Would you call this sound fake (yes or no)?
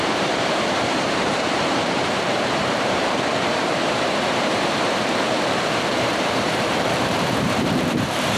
yes